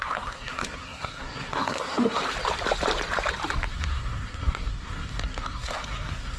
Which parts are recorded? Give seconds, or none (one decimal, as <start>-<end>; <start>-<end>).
2.2-3.7